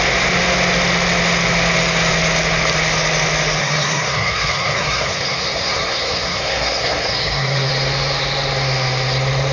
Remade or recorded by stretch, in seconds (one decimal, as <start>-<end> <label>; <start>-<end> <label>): 0.0-3.6 recorded; 3.6-7.7 remade; 7.7-9.5 recorded